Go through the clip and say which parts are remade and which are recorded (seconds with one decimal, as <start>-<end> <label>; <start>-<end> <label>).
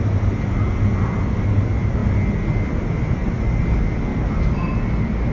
0.0-5.3 recorded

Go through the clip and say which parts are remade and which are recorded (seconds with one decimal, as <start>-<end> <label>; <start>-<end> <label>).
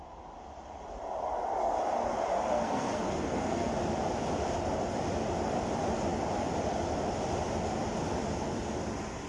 0.0-2.3 recorded; 2.3-3.7 remade; 3.7-9.3 recorded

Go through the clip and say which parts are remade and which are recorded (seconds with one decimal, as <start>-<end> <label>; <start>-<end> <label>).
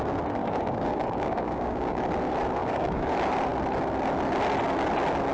0.0-0.4 recorded; 0.4-2.0 remade; 2.0-2.6 recorded; 2.6-3.1 remade; 3.1-5.3 recorded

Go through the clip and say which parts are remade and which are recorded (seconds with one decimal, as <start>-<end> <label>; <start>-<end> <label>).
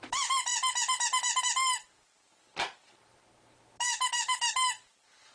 0.0-5.3 recorded